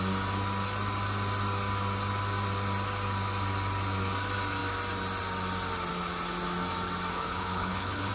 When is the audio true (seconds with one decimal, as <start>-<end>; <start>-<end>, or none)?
0.0-7.1